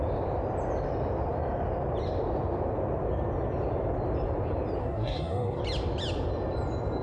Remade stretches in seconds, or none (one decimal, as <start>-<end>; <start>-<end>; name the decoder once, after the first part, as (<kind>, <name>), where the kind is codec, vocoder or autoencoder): 4.8-5.6 (codec, SNAC)